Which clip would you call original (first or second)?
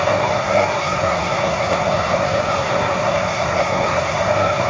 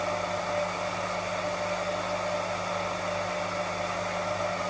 second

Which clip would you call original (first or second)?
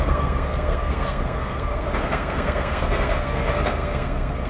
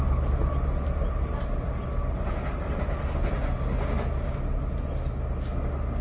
second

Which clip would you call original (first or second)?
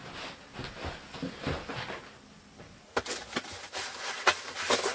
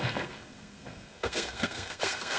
first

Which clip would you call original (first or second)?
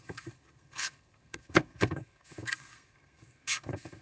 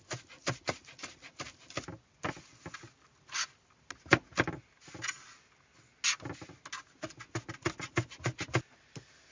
second